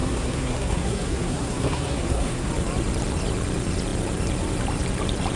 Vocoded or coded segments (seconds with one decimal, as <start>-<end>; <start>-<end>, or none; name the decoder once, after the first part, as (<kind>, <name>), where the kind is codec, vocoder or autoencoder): 0.0-2.5 (codec, SNAC)